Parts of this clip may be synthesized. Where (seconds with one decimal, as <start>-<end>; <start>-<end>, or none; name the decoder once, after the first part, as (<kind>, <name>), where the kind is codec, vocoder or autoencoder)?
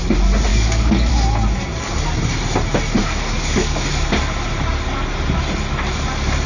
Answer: 0.5-1.1 (codec, DAC); 3.0-3.8